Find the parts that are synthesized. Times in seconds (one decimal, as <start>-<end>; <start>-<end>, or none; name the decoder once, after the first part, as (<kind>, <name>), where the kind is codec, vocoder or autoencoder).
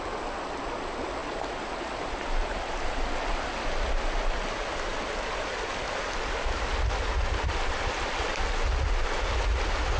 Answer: none